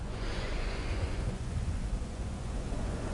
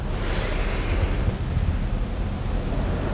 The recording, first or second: second